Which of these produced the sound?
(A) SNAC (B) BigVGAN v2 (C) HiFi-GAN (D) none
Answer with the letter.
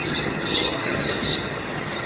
C